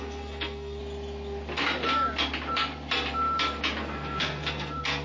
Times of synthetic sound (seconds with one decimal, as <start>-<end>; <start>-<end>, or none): 0.0-0.8; 3.8-5.0